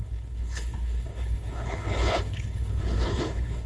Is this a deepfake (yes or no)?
yes